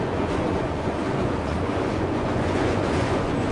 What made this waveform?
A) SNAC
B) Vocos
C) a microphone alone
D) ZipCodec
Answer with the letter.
B